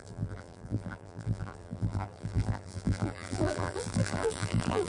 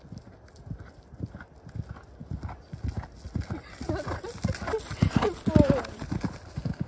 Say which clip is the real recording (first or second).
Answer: second